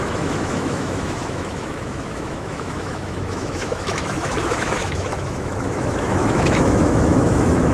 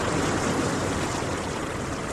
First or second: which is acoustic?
second